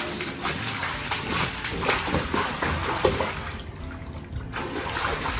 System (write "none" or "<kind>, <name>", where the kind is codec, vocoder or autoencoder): none